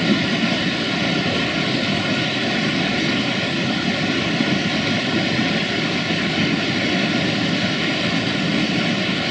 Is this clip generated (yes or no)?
no